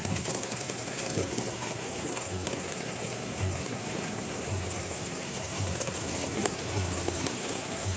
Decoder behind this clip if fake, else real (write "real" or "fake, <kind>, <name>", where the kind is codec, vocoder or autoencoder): fake, codec, SNAC